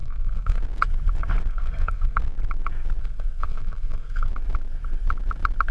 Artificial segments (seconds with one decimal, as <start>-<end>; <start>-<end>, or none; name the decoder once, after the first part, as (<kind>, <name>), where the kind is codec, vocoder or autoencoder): 0.0-0.6 (codec, SNAC); 1.5-2.2; 3.0-4.3